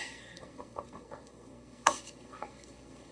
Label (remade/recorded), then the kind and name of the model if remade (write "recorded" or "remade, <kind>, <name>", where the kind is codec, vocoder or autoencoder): remade, codec, SNAC